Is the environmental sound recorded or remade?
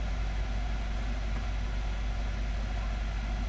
recorded